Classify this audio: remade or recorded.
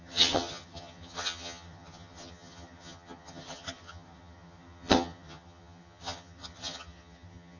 remade